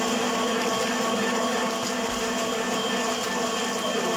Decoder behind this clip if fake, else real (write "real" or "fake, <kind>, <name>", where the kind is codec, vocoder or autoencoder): real